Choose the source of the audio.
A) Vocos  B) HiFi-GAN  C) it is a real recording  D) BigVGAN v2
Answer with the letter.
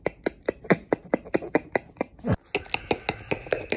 C